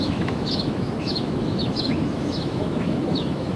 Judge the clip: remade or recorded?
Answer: remade